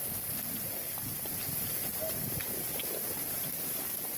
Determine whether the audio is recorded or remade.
recorded